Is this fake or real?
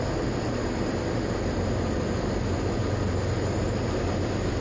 real